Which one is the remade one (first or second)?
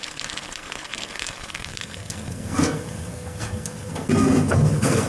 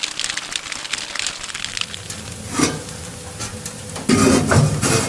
first